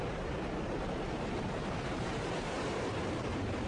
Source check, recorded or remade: remade